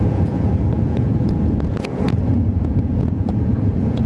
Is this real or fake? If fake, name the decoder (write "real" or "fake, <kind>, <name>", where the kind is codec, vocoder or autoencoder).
fake, vocoder, Vocos